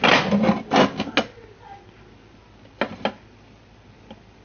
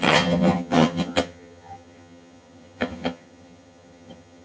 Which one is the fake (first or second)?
second